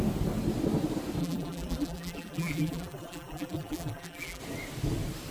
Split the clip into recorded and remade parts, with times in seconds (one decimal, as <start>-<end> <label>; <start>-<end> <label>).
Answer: 0.0-1.2 recorded; 1.2-4.4 remade; 4.4-5.3 recorded